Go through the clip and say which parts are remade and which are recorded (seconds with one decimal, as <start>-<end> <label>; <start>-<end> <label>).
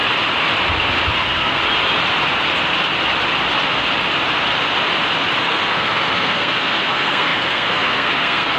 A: 0.0-1.1 recorded; 1.1-1.6 remade; 1.6-5.4 recorded; 5.4-8.6 remade